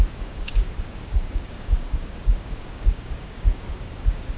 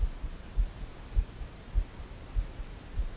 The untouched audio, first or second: second